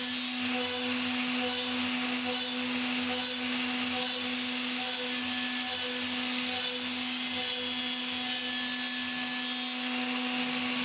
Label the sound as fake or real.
real